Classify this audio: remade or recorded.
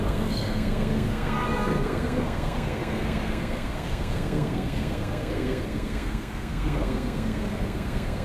remade